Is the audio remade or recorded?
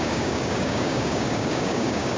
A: remade